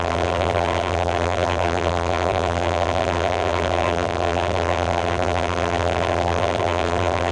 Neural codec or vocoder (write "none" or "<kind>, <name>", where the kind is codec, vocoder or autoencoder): vocoder, BigVGAN v2